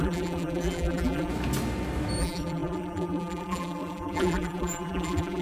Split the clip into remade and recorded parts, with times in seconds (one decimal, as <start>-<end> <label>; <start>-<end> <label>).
0.0-1.3 remade; 1.3-2.2 recorded; 2.2-5.4 remade